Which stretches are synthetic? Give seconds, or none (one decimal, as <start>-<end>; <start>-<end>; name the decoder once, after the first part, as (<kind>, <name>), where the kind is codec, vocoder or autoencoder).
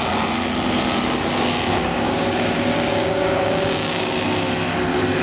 1.7-4.1 (codec, DAC)